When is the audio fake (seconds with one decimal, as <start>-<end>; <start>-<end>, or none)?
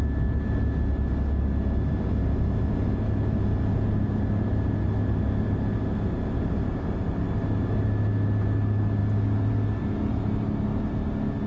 none